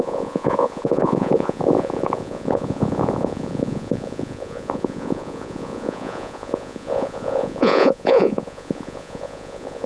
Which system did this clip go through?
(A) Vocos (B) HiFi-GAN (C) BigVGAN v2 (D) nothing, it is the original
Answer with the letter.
A